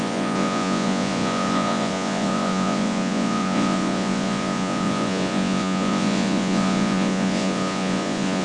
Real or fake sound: fake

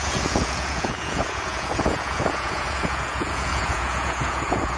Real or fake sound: fake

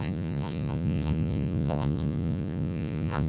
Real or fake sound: fake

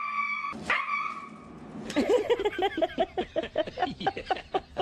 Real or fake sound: real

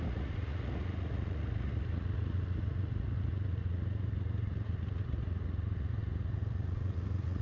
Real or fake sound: fake